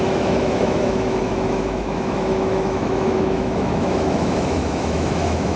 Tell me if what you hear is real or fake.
fake